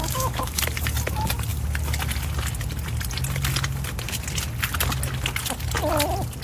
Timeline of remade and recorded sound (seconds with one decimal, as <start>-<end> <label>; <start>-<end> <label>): 0.0-0.6 remade; 0.6-6.4 recorded